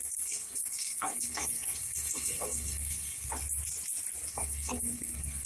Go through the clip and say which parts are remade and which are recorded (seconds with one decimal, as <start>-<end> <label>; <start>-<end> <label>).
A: 0.0-3.3 remade; 3.3-4.3 recorded; 4.3-5.5 remade